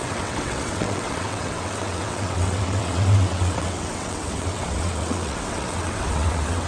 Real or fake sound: fake